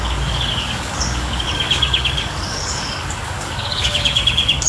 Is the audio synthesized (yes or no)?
yes